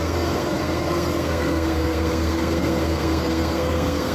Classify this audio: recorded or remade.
remade